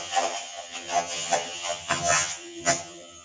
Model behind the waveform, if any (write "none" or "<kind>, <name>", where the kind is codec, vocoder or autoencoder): vocoder, HiFi-GAN